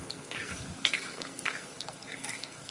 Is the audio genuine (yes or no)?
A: no